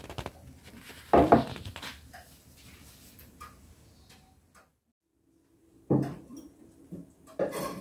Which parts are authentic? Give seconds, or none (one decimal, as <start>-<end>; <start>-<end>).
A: 0.0-7.8